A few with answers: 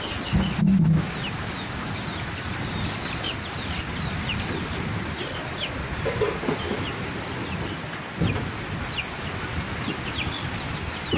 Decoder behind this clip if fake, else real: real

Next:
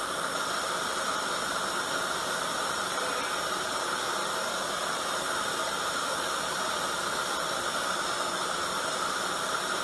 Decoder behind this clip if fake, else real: real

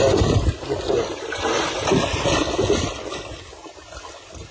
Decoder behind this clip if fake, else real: real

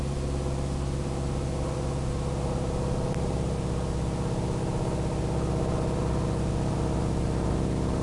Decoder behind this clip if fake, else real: real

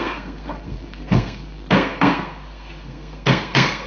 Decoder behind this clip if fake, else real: fake, codec, SNAC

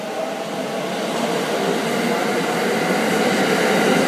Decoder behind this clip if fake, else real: real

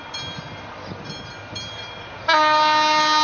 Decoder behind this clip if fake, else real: real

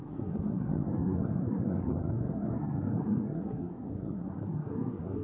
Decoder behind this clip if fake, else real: fake, codec, SNAC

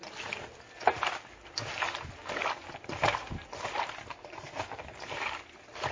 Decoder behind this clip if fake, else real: real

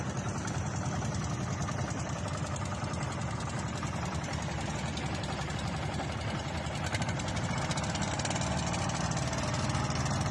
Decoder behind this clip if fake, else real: real